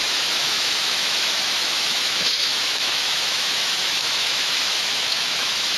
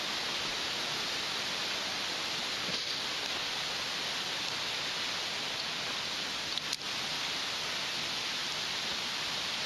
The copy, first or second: first